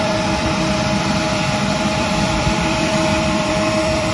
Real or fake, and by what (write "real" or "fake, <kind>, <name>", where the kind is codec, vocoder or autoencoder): fake, vocoder, BigVGAN v2